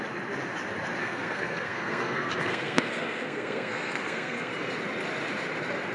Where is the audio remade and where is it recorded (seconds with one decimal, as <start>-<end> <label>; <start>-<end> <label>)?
0.0-1.0 recorded; 1.0-4.5 remade; 4.5-5.9 recorded